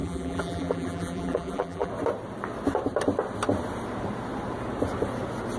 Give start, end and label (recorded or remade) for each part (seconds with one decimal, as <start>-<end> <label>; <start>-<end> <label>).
0.0-1.9 remade; 1.9-5.6 recorded